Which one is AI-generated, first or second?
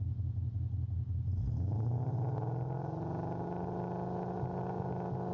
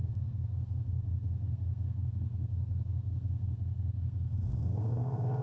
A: second